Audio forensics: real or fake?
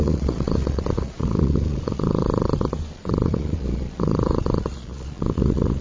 fake